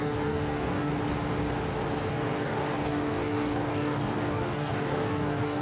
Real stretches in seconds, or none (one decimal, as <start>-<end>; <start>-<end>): 0.9-2.1